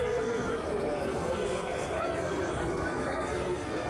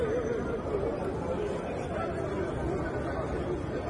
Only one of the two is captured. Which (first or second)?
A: second